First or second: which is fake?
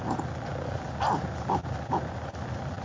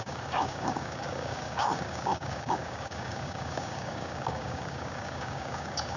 second